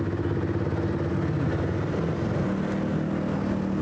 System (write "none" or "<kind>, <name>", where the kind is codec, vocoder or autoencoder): none